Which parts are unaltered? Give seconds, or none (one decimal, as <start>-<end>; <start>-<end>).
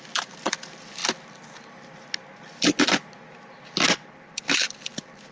0.0-5.3